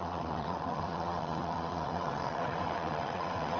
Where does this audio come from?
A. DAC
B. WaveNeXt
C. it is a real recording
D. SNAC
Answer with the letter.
B